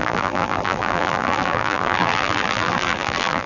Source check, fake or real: fake